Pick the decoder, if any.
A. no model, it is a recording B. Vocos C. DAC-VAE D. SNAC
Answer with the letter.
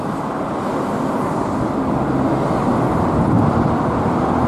A